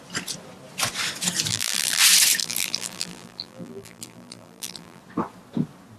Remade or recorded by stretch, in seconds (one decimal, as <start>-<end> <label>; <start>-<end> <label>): 0.0-1.5 recorded; 1.5-2.0 remade; 2.0-2.4 recorded; 2.4-5.0 remade; 5.0-6.0 recorded

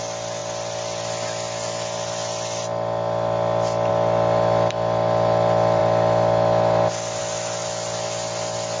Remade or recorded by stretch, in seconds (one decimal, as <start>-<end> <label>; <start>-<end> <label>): 0.0-8.8 recorded

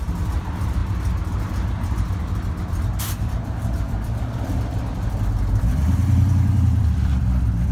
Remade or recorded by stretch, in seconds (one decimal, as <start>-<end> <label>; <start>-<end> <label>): 0.0-0.8 remade; 0.8-3.2 recorded; 3.2-7.7 remade